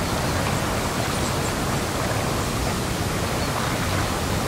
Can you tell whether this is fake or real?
real